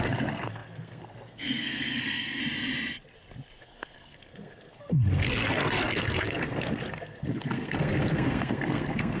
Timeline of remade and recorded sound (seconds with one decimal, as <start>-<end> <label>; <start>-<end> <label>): 0.0-2.4 remade; 2.4-3.6 recorded; 3.6-9.2 remade